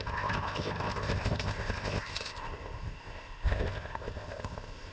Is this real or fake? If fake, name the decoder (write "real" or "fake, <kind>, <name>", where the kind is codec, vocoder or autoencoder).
fake, codec, ZipCodec